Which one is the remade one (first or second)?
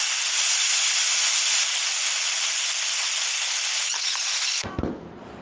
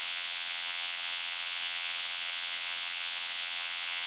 second